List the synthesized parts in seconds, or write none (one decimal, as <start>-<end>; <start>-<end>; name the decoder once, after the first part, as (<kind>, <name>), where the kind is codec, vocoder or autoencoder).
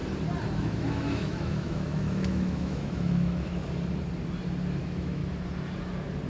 0.6-3.6 (autoencoder, DAC-VAE); 4.8-5.2